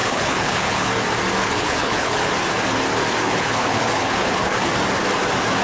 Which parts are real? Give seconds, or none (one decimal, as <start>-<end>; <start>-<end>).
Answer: 0.9-1.4; 2.3-3.2; 4.7-5.6